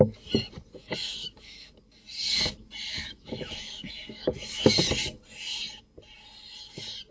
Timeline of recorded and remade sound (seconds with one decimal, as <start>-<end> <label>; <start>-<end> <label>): 0.0-0.8 recorded; 0.8-1.8 remade; 1.8-2.9 recorded; 2.9-4.7 remade; 4.7-7.1 recorded